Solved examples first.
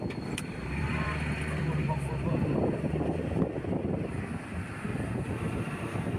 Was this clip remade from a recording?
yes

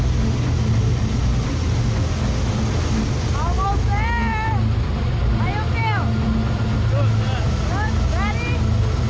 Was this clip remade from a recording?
no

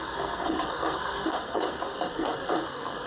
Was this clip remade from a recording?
yes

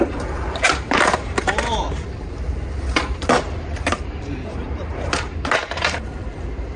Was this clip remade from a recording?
yes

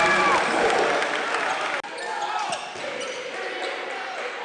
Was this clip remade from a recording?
no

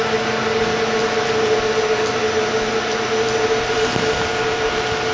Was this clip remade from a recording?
no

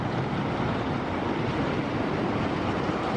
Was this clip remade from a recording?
no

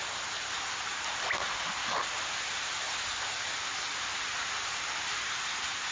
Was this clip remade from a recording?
no